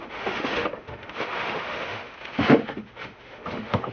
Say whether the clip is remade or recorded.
remade